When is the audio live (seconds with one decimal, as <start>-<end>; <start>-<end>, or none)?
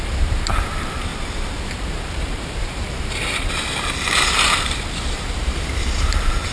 1.1-1.9